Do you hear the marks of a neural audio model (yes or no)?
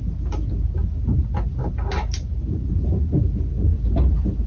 no